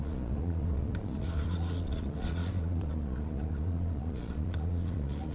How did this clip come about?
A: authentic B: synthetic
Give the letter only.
B